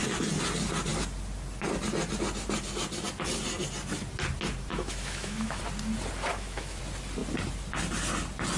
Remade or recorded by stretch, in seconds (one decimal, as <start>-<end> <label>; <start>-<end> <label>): 0.0-4.7 recorded; 4.7-5.6 remade; 5.6-6.3 recorded; 6.3-6.8 remade; 6.8-8.6 recorded